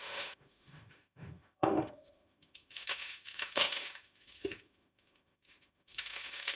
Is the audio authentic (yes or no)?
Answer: no